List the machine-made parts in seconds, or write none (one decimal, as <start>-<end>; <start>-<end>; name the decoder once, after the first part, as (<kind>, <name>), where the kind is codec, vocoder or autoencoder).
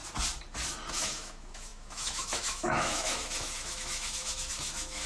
0.9-5.1 (autoencoder, DAC-VAE)